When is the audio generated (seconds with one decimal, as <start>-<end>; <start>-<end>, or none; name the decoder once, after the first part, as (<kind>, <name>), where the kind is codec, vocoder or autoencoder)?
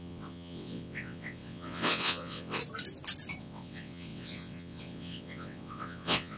0.0-2.6 (vocoder, WaveNeXt); 3.4-6.4